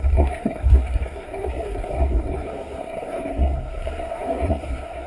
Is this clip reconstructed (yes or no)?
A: yes